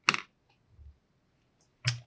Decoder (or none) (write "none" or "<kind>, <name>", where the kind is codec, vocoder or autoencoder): none